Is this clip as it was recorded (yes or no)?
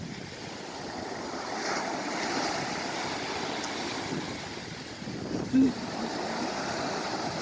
yes